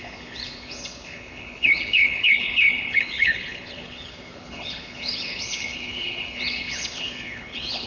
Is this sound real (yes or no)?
no